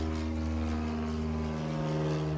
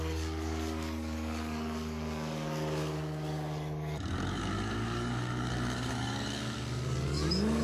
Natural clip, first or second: first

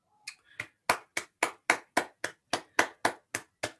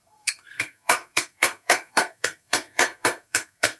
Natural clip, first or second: first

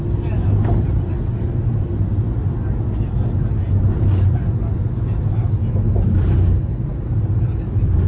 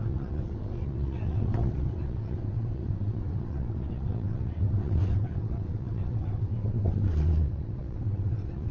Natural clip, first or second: first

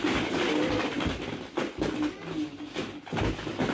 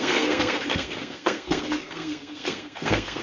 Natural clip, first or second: first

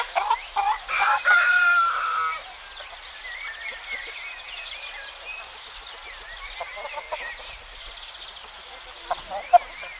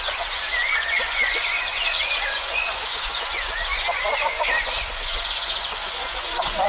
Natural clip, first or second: first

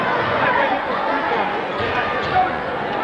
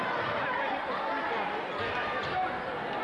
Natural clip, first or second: second